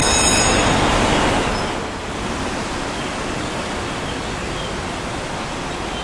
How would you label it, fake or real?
real